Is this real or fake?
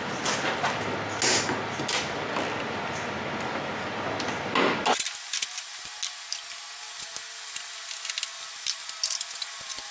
real